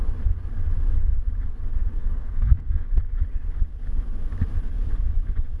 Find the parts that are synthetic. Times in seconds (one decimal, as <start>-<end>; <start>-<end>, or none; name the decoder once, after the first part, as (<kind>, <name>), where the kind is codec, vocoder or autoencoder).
1.9-2.9 (codec, SNAC)